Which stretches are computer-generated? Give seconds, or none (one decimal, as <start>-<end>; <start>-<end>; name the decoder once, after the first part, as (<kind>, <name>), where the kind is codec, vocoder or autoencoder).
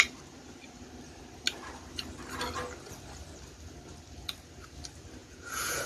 5.2-5.9 (vocoder, Vocos)